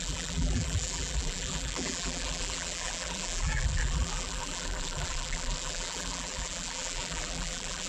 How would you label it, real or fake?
fake